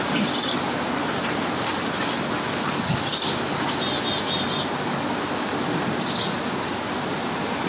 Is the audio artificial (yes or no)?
no